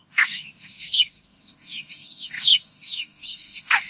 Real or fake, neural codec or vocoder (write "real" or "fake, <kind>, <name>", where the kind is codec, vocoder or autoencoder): fake, autoencoder, DAC-VAE